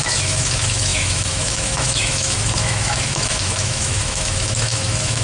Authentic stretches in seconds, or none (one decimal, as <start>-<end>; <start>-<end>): none